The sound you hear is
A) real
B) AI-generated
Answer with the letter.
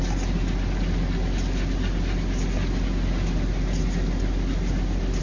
A